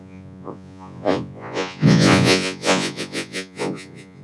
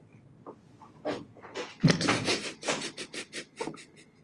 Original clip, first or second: second